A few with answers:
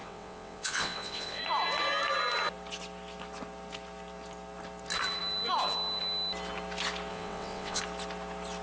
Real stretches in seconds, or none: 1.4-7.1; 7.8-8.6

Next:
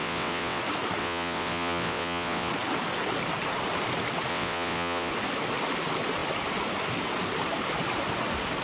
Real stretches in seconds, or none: 0.6-1.0; 2.5-4.3; 5.1-8.6

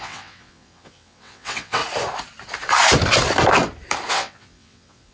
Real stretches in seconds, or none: 1.8-4.1

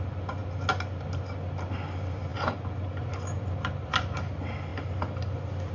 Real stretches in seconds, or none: 0.0-5.7

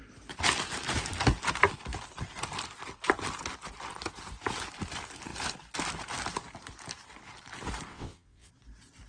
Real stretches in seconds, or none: 0.0-7.9; 8.5-9.1

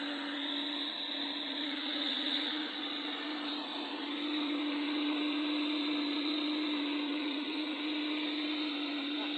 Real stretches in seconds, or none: 0.0-1.5; 2.6-7.1; 7.8-9.4

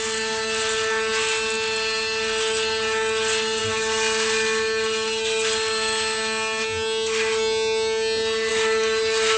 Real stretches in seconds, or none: 0.0-9.4

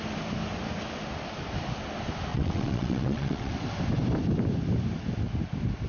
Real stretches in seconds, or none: 0.0-2.3; 3.5-5.9